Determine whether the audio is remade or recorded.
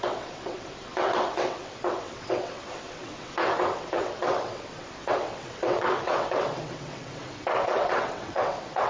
remade